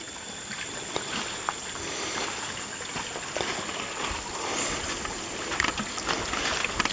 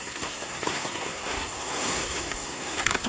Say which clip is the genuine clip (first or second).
first